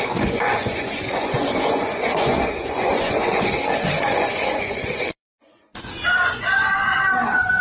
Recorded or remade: remade